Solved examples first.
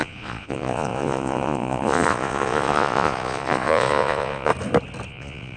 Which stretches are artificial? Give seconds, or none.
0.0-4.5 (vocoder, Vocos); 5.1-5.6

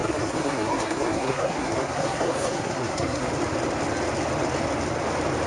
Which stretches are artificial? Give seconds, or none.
0.0-3.3 (codec, SNAC)

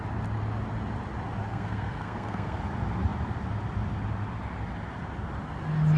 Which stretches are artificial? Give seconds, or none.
1.5-2.6 (codec, SNAC)